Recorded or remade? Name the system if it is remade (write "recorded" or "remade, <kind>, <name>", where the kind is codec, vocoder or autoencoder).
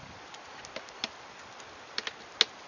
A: recorded